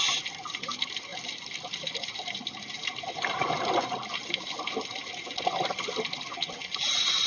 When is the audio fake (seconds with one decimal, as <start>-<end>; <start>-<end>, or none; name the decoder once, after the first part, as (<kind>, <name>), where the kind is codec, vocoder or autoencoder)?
none